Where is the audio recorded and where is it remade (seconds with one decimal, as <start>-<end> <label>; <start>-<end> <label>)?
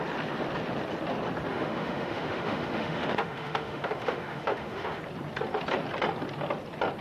0.0-1.5 recorded; 1.5-5.0 remade; 5.0-7.0 recorded